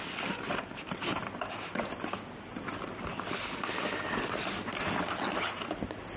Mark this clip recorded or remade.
recorded